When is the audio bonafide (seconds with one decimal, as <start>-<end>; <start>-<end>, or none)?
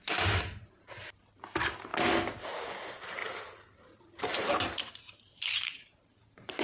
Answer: 1.9-2.6